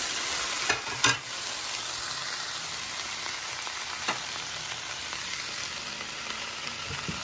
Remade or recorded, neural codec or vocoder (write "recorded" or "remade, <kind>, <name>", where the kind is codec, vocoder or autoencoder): recorded